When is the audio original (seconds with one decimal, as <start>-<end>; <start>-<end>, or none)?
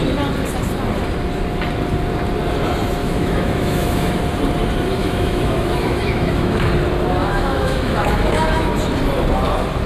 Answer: 0.0-3.0; 4.2-5.0; 6.7-7.2; 8.7-9.9